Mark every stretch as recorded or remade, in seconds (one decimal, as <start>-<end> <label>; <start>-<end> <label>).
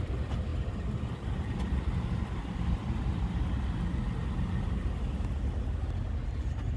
0.0-6.8 recorded